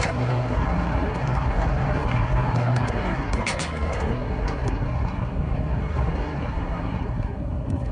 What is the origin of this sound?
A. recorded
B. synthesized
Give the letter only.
B